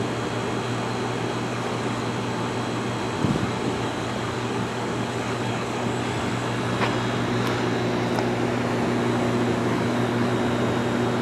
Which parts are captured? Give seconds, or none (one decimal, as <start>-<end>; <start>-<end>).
0.0-1.5; 2.0-3.2; 6.1-9.6; 10.3-11.2

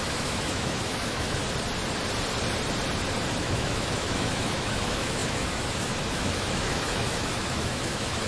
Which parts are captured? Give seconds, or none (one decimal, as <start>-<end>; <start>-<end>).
1.4-3.4

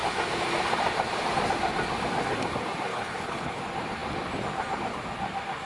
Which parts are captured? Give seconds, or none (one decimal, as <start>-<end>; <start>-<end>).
0.0-2.9; 3.6-5.7

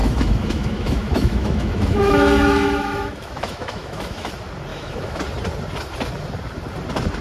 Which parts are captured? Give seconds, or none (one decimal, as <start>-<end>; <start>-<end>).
4.3-4.7; 5.2-7.2

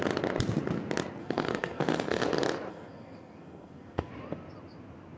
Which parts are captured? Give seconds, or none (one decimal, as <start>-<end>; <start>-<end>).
0.0-1.2; 2.2-2.7; 4.1-5.2

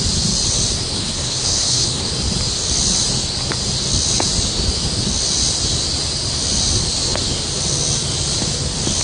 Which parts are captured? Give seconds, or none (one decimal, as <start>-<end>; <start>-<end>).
0.0-0.9; 2.1-9.0

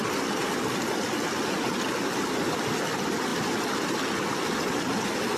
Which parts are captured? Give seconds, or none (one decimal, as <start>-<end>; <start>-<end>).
0.0-5.4